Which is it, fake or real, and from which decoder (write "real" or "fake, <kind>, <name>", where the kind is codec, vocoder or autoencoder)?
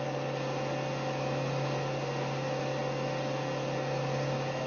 real